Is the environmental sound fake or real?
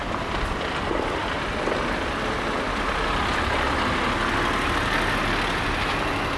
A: real